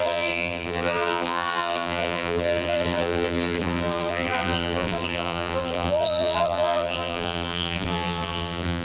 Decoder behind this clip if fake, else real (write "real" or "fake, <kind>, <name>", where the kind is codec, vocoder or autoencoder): fake, vocoder, BigVGAN v2